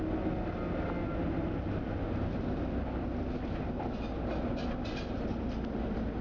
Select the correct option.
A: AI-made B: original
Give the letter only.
B